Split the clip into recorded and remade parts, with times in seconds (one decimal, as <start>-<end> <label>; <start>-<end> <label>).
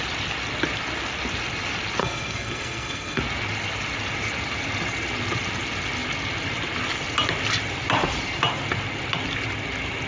0.0-2.0 recorded; 2.0-3.2 remade; 3.2-10.1 recorded